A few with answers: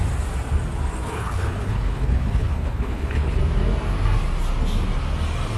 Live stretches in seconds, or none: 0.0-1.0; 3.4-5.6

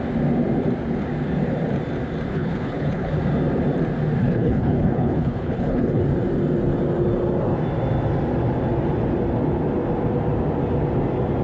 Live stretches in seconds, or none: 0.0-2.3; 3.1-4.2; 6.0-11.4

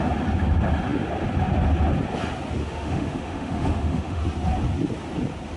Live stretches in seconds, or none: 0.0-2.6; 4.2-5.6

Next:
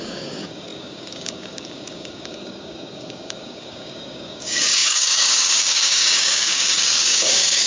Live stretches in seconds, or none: none

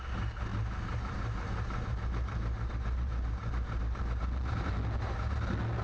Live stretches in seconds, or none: 0.0-0.5; 4.0-5.8

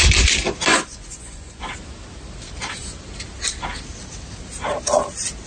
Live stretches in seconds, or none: 0.0-0.7; 1.6-5.5

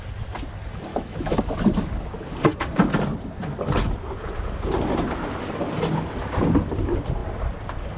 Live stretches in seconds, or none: 0.0-0.9; 1.4-8.0

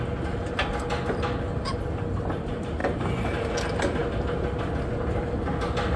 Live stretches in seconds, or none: 0.0-6.0